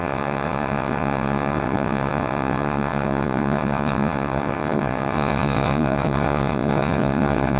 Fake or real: fake